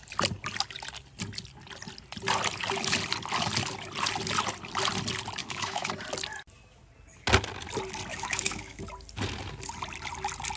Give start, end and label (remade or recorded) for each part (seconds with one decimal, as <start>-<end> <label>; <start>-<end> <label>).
0.0-5.4 recorded; 5.4-5.9 remade; 5.9-8.1 recorded; 8.1-8.8 remade; 8.8-10.6 recorded